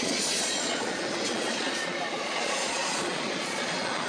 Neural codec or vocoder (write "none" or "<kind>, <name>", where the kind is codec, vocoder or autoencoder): vocoder, Vocos